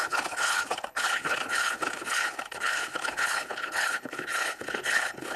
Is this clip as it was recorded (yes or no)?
no